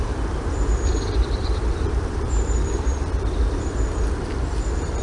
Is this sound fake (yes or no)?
yes